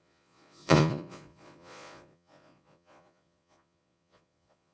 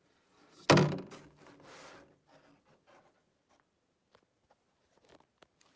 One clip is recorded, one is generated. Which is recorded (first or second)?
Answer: second